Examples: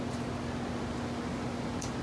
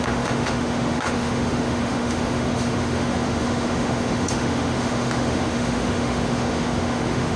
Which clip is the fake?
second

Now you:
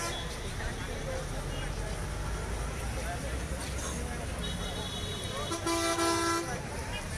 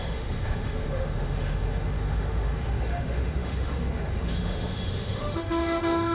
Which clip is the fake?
second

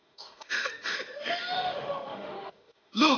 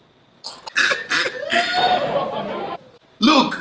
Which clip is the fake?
first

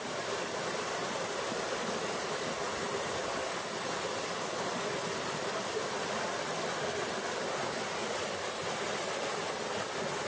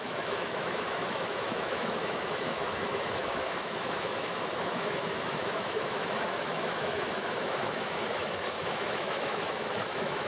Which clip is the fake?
second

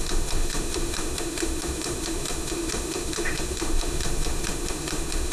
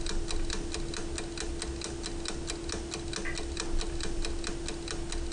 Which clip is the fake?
first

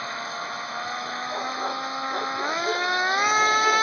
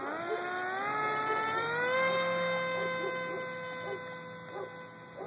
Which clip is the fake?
first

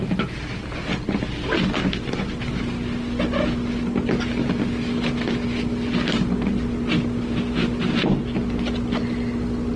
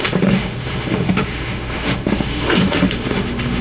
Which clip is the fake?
second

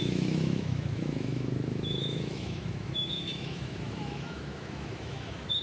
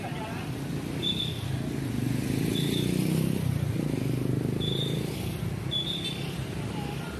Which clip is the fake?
first